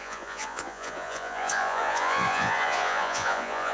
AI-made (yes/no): yes